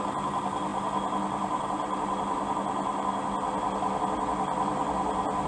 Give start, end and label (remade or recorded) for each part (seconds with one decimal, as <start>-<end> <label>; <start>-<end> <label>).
0.0-5.5 recorded